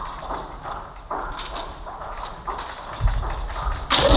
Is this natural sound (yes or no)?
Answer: yes